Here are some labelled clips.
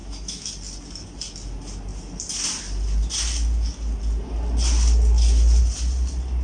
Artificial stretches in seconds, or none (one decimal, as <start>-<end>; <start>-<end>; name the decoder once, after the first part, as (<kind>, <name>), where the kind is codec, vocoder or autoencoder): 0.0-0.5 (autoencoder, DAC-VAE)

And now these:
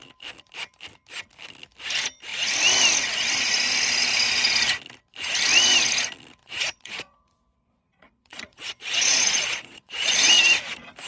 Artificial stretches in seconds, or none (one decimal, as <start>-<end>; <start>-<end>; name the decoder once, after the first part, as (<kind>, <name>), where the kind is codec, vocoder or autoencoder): 6.4-10.3 (vocoder, Vocos)

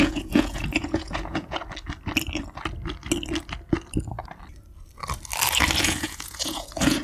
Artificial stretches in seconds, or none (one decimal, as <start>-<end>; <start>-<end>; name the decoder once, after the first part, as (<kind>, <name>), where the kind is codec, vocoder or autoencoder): 0.0-1.6 (vocoder, Vocos); 5.8-7.0

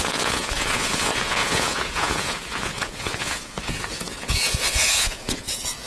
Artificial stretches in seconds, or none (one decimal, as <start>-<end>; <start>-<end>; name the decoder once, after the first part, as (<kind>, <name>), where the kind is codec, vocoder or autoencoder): 0.0-5.9 (vocoder, Vocos)

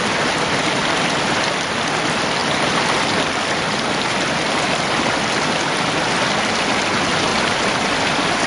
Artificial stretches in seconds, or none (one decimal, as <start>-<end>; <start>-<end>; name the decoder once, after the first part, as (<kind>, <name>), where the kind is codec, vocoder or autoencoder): 7.3-7.9 (vocoder, BigVGAN v2)

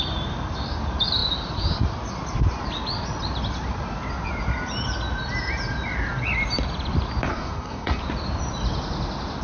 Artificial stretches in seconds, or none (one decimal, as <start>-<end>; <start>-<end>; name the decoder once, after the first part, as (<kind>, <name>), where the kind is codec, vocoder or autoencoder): 7.3-8.0 (codec, SNAC)